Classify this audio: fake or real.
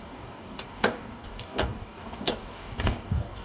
fake